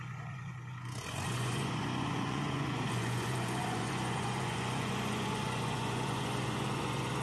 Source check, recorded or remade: remade